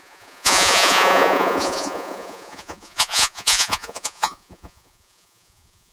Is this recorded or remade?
remade